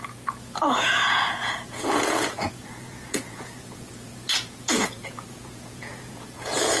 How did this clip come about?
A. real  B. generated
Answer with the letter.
B